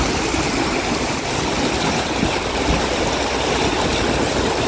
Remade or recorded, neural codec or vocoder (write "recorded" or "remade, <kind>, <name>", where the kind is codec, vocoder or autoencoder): recorded